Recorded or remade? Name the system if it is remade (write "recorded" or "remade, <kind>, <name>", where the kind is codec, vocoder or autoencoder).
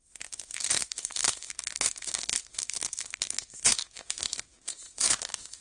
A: remade, autoencoder, DAC-VAE